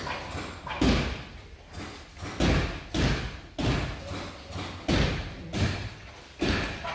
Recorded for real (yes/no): yes